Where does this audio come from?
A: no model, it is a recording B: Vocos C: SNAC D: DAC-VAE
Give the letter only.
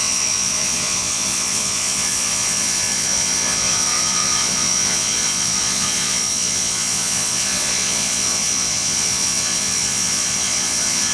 B